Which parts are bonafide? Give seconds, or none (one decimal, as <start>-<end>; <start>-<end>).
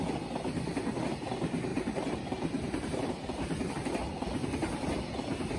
0.0-1.7; 3.7-5.6